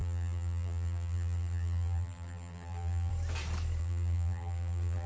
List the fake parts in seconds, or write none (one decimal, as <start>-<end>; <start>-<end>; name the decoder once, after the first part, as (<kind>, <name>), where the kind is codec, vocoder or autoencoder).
0.0-3.1 (vocoder, BigVGAN v2); 3.8-5.1